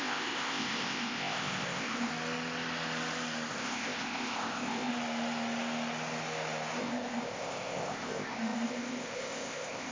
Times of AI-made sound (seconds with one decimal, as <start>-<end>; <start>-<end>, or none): 0.0-2.1; 3.5-4.9; 6.8-9.9